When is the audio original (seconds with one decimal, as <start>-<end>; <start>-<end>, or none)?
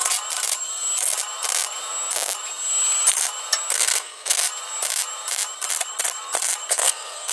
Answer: 0.0-3.7; 4.4-6.7